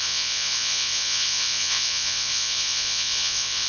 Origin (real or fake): fake